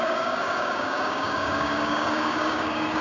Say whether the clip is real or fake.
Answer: fake